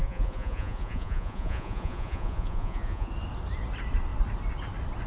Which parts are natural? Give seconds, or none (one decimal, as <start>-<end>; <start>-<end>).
3.1-5.1